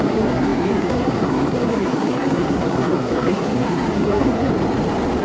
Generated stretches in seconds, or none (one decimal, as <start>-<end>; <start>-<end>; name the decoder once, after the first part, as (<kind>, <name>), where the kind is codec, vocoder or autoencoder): 0.0-4.5 (codec, SNAC)